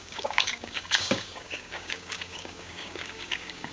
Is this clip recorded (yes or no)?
no